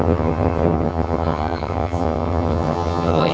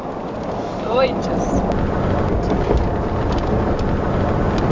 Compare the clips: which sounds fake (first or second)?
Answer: first